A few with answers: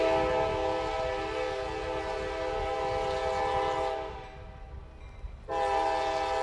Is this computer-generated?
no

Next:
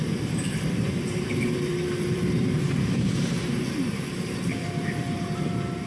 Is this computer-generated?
yes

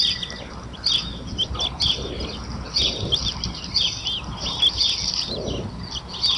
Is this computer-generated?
no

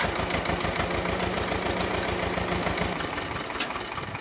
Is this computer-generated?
no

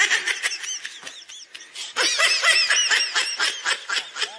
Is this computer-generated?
no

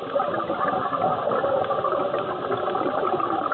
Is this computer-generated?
no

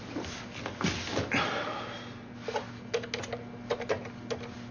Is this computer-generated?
no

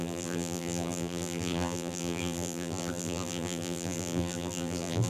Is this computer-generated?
yes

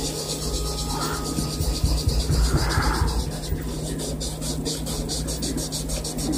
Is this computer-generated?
no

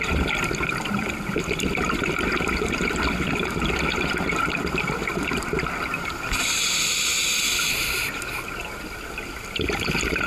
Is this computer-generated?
no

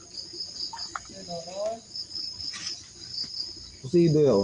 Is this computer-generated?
no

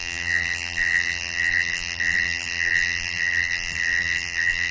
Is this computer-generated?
yes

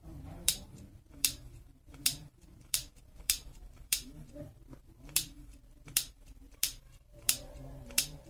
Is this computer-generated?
yes